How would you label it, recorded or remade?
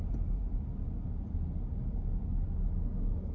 recorded